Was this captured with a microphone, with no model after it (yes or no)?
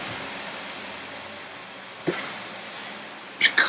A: yes